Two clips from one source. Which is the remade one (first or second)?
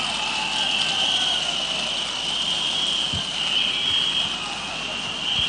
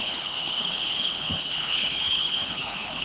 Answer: second